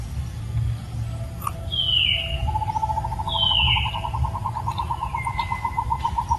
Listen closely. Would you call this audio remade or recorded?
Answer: recorded